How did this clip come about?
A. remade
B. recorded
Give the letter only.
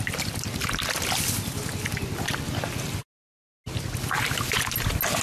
B